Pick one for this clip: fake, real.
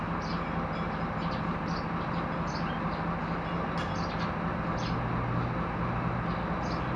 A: real